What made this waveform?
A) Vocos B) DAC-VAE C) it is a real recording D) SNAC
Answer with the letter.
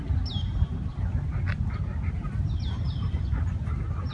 C